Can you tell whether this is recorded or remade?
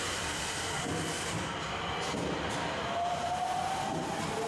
recorded